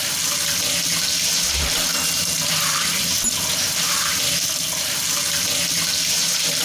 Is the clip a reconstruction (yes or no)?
no